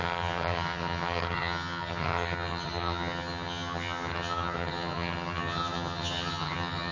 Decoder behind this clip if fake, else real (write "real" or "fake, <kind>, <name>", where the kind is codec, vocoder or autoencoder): fake, vocoder, HiFi-GAN